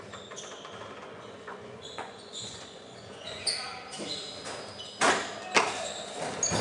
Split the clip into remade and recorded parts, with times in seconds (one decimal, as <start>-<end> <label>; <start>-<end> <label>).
0.0-1.0 recorded; 1.0-3.5 remade; 3.5-6.6 recorded